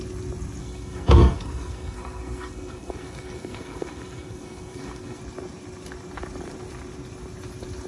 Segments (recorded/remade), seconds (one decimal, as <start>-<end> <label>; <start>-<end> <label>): 0.0-0.6 recorded; 0.6-5.2 remade; 5.2-7.9 recorded